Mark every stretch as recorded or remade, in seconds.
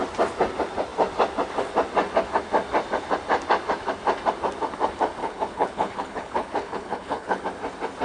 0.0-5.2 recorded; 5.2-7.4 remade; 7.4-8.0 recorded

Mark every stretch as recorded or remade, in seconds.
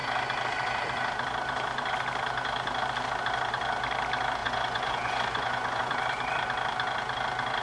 0.0-4.4 recorded; 4.4-5.9 remade; 5.9-7.6 recorded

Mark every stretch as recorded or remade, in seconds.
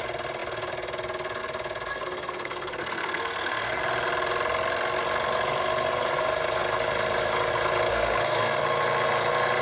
0.0-1.9 recorded; 1.9-3.8 remade; 3.8-7.9 recorded; 7.9-8.6 remade; 8.6-9.6 recorded